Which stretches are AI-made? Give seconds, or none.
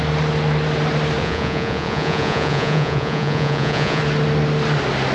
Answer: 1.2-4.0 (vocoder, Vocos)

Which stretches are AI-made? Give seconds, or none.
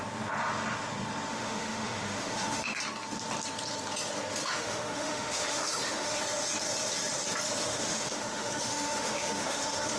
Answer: 1.3-2.8 (autoencoder, DAC-VAE); 4.4-6.2; 7.6-10.0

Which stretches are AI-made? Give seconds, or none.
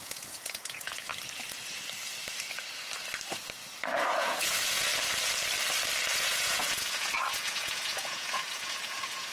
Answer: 0.0-1.1 (vocoder, Vocos); 4.2-4.9; 6.2-9.3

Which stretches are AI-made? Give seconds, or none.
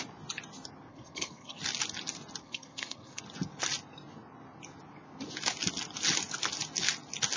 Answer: 0.9-1.6 (codec, SNAC); 2.4-3.2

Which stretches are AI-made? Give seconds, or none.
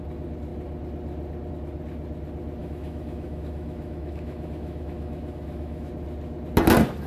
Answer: 2.6-5.9 (autoencoder, DAC-VAE)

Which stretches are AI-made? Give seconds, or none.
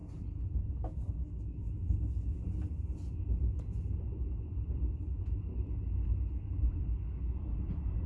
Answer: 2.5-5.5 (vocoder, BigVGAN v2)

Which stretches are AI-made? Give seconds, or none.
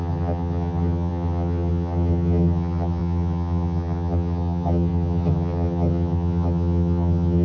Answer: 0.0-7.4 (vocoder, HiFi-GAN)